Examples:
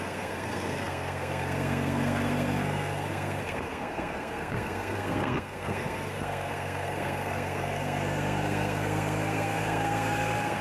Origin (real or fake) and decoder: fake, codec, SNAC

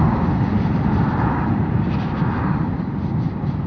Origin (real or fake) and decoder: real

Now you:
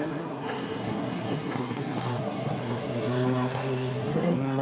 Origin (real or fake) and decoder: fake, codec, SNAC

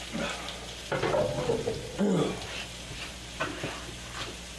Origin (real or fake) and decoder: real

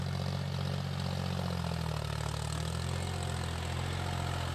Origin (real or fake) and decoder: real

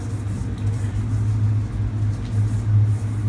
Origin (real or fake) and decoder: real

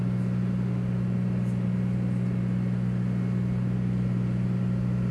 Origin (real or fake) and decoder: real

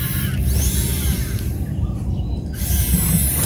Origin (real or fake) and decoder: real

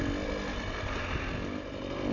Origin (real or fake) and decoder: real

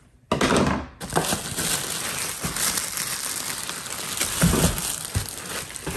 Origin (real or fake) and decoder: real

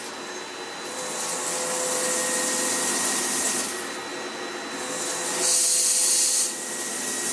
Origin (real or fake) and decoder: real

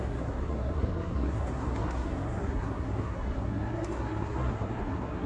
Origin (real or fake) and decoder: fake, codec, SNAC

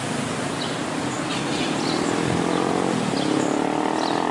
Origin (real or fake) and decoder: real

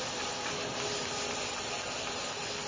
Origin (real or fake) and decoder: real